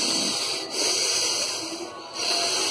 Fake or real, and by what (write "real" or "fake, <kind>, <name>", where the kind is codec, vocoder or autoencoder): real